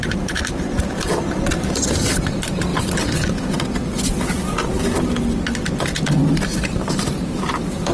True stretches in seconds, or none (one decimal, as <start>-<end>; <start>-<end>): 2.7-5.8; 6.2-6.7